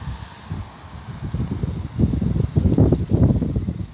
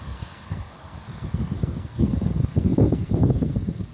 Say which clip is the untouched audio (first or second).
first